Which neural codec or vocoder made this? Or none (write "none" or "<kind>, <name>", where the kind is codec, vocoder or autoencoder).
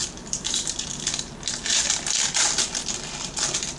vocoder, BigVGAN v2